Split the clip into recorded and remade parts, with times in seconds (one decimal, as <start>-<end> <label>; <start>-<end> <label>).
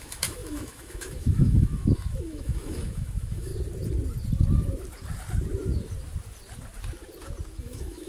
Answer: 0.0-3.5 remade; 3.5-7.6 recorded; 7.6-8.1 remade